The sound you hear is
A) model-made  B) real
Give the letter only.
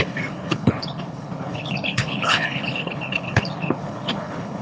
A